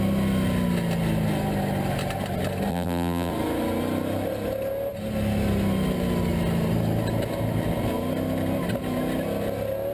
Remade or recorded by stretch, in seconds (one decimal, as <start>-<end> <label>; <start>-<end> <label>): 0.0-2.7 recorded; 2.7-3.3 remade; 3.3-9.9 recorded